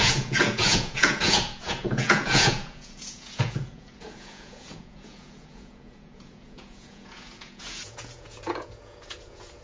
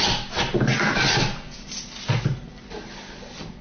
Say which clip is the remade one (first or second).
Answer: first